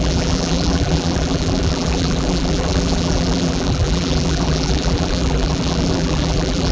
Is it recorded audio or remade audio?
remade